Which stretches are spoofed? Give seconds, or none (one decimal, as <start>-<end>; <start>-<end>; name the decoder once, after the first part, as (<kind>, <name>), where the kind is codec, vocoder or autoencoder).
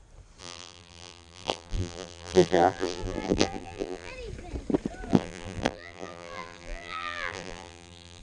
0.4-4.1 (vocoder, BigVGAN v2); 5.1-8.2